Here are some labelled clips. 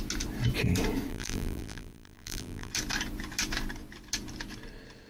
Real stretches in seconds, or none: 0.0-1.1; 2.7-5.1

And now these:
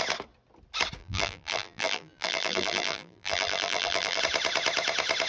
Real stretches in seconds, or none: 0.0-1.0; 4.2-5.3

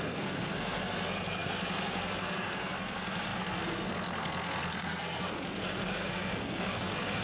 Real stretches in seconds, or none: none

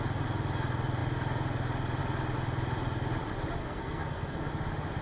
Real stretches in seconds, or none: 0.0-3.6; 4.5-5.0

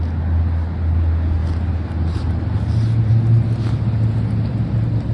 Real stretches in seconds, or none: 0.0-5.1